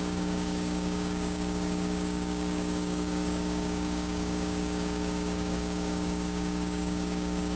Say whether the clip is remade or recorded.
remade